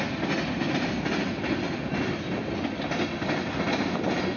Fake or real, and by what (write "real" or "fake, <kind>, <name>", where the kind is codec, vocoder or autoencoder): real